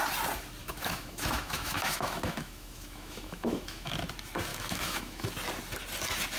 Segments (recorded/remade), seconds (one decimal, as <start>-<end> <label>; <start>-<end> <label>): 0.0-0.6 recorded; 0.6-3.9 remade; 3.9-4.5 recorded; 4.5-5.3 remade; 5.3-6.4 recorded